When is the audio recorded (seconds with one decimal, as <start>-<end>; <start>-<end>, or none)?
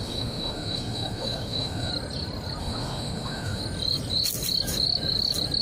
1.9-2.6; 3.6-5.6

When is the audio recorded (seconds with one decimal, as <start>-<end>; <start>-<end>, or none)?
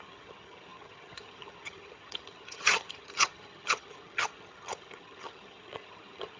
none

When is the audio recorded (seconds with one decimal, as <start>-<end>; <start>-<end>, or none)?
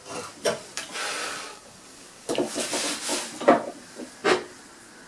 0.0-1.2; 2.7-5.1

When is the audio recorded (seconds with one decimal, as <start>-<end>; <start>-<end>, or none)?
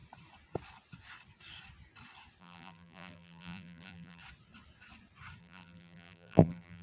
0.0-2.4; 4.2-5.4